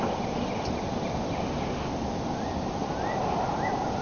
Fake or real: real